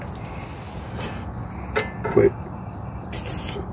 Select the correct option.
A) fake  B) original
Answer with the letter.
B